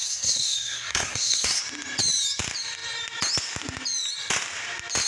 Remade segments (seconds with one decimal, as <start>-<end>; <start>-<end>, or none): 0.0-1.6